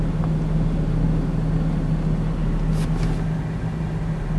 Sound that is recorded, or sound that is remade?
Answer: recorded